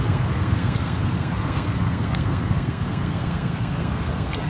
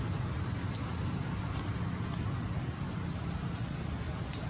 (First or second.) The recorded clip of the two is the second